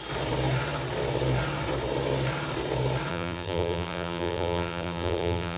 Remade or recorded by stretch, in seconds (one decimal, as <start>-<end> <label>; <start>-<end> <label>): 0.0-3.1 recorded; 3.1-5.6 remade